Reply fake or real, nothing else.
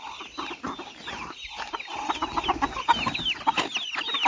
real